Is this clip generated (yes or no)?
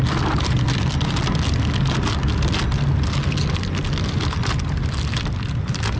no